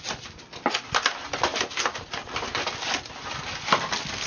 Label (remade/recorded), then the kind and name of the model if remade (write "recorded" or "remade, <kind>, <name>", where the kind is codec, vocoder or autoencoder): recorded